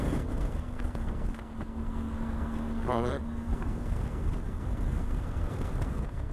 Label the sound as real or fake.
fake